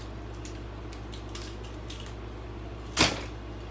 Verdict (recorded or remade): recorded